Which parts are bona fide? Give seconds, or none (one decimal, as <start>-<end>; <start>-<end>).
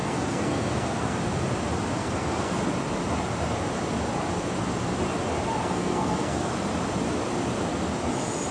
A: 1.2-2.0; 2.6-5.6; 6.5-8.5